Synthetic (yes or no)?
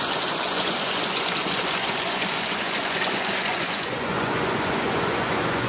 yes